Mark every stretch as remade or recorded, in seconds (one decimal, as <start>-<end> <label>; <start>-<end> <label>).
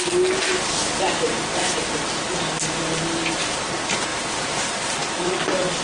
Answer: 0.0-4.1 recorded; 4.1-5.3 remade; 5.3-5.8 recorded